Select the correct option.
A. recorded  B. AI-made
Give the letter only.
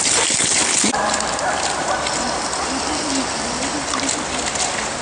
B